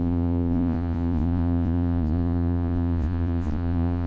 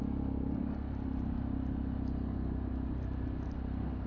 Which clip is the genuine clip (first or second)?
second